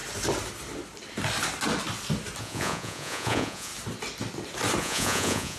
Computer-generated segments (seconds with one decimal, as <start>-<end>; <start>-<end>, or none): 2.4-3.7; 4.8-5.6